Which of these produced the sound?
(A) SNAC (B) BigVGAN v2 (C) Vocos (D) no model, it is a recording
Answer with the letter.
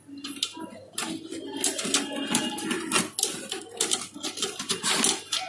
D